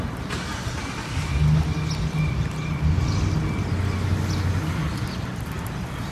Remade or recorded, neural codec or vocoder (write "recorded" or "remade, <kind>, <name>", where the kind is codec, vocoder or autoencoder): recorded